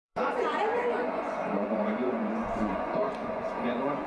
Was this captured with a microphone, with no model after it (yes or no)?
no